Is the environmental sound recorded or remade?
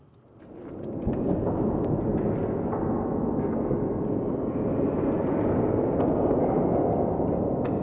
recorded